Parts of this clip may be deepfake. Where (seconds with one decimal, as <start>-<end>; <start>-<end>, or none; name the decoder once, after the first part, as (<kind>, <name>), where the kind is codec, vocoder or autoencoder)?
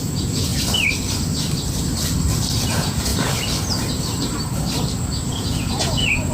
0.0-0.5 (vocoder, Vocos); 2.7-3.1; 5.3-6.3